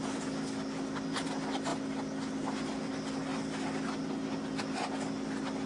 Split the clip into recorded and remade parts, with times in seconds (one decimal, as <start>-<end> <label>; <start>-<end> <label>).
0.0-5.7 recorded